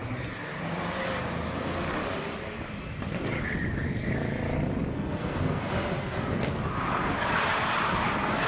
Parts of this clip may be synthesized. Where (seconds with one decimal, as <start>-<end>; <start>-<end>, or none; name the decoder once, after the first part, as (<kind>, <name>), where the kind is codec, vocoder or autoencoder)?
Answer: 4.9-5.7 (codec, SNAC)